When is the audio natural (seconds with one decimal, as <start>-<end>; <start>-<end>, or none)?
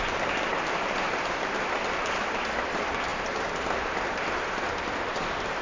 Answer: 0.0-5.6